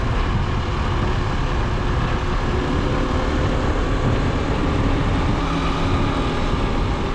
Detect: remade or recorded recorded